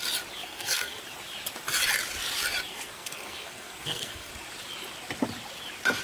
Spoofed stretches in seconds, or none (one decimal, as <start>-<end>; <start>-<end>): 0.4-1.0; 2.7-4.3